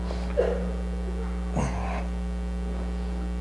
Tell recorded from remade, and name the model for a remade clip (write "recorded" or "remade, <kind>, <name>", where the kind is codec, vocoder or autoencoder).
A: recorded